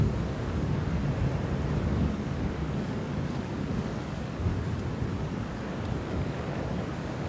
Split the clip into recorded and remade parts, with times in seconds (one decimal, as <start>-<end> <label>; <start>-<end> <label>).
0.0-1.0 remade; 1.0-1.8 recorded; 1.8-4.5 remade; 4.5-5.2 recorded; 5.2-7.3 remade